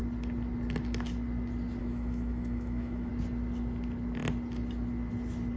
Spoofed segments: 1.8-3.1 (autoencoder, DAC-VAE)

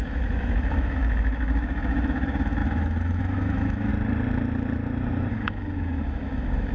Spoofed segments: 0.0-3.9 (autoencoder, DAC-VAE); 5.3-6.7

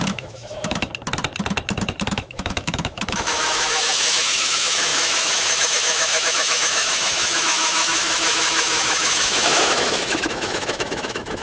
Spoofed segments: 0.0-0.9 (autoencoder, DAC-VAE); 2.1-11.4